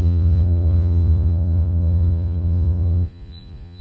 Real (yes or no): no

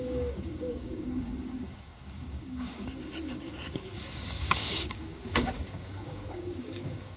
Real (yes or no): no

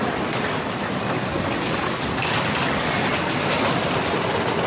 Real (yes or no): yes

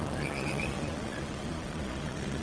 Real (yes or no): no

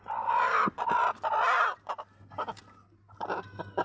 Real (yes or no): yes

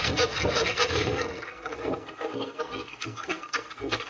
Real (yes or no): no